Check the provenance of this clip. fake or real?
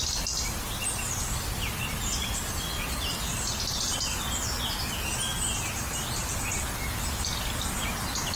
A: real